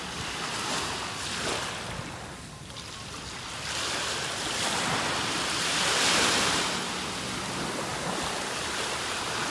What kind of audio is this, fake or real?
real